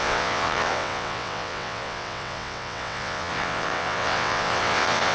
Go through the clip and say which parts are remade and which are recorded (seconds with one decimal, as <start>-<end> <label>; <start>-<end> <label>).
0.0-5.1 remade